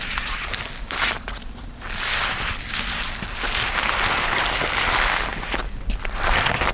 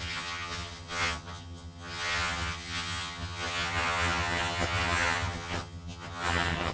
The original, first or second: first